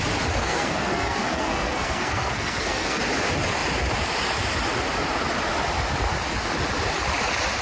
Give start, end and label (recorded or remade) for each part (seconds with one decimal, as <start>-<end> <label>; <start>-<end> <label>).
0.0-0.4 recorded; 0.4-3.0 remade; 3.0-7.6 recorded